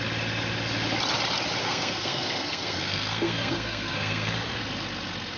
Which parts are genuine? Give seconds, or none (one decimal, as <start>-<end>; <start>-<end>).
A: 0.0-1.6; 4.6-5.4